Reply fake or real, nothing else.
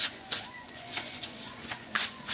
fake